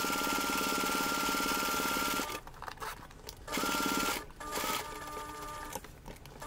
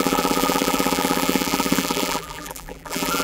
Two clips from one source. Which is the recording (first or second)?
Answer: first